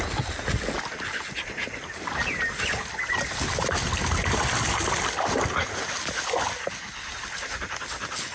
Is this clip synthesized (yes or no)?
no